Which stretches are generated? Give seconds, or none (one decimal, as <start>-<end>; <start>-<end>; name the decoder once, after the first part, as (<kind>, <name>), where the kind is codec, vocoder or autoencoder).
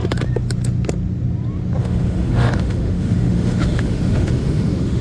1.8-5.0 (autoencoder, DAC-VAE)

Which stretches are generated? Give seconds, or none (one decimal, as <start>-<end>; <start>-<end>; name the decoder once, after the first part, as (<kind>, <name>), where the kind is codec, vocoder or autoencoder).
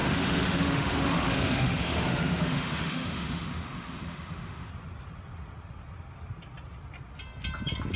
0.0-4.7 (autoencoder, DAC-VAE)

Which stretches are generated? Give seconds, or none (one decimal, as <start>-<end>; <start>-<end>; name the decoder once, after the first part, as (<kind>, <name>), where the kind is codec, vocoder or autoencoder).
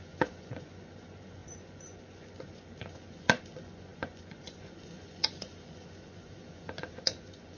0.0-7.6 (vocoder, Vocos)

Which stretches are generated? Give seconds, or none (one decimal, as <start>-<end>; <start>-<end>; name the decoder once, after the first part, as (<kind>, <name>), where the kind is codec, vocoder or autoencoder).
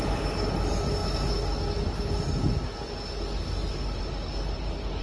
none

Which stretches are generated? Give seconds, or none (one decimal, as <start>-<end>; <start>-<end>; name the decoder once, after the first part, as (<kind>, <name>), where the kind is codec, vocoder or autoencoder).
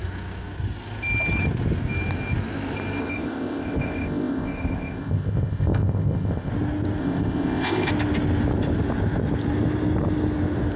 3.0-6.5 (codec, ZipCodec); 7.0-7.9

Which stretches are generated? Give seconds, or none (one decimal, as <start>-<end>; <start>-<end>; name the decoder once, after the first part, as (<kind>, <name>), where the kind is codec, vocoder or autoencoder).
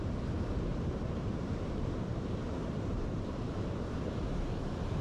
0.7-3.7 (vocoder, BigVGAN v2)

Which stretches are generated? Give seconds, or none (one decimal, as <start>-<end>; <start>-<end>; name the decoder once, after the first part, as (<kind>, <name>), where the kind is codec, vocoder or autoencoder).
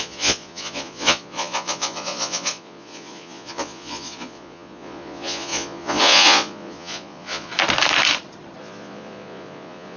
0.0-7.5 (vocoder, Vocos); 8.6-10.0